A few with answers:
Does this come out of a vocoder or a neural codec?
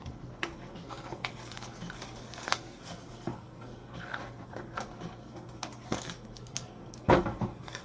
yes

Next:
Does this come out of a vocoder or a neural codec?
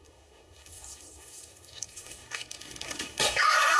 yes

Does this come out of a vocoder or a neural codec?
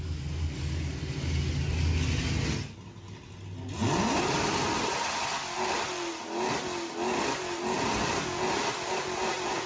no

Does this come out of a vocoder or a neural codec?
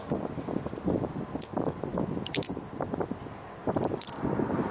no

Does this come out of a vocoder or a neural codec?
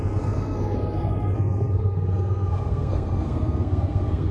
yes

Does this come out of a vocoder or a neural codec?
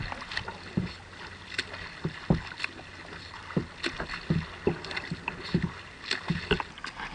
no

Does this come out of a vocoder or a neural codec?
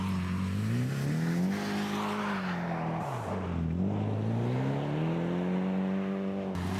no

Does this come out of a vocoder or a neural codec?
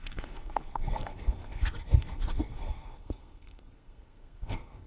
yes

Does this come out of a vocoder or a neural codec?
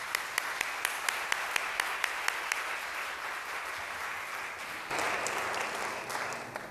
no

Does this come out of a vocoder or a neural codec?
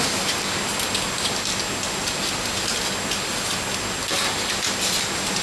no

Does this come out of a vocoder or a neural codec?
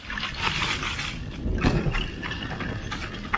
no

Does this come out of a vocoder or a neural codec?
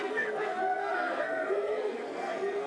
yes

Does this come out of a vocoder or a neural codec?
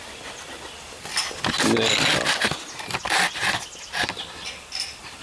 no